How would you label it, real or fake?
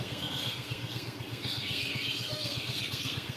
fake